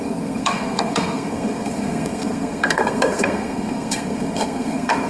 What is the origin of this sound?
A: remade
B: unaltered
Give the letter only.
A